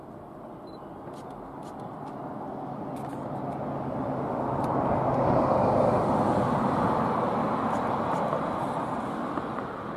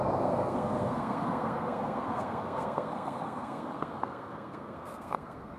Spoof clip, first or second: second